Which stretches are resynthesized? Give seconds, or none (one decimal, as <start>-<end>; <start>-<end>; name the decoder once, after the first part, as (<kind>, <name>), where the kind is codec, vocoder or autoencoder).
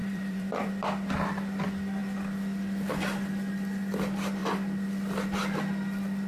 0.0-0.7 (vocoder, BigVGAN v2)